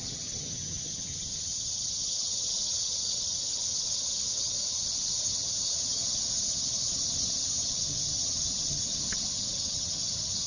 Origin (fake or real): fake